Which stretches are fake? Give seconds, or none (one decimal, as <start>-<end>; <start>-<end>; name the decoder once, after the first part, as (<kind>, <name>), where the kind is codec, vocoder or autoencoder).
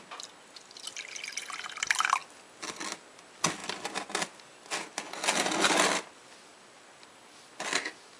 none